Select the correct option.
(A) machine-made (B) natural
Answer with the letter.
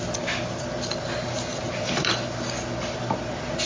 B